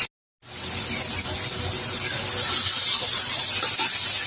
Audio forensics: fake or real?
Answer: real